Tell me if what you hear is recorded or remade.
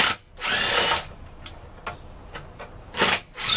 recorded